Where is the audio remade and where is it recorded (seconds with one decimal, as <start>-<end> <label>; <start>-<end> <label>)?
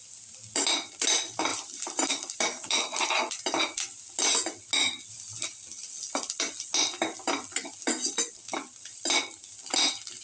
0.0-1.5 recorded; 1.5-3.1 remade; 3.1-10.2 recorded